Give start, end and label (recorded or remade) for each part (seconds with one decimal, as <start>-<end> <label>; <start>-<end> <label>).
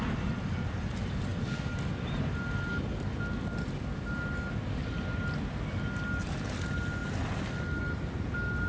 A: 0.0-8.7 recorded